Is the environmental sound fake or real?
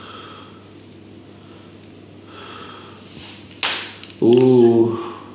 real